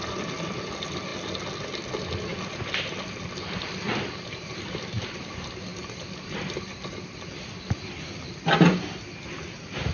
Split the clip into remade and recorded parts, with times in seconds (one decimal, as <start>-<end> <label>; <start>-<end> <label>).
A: 0.0-9.9 recorded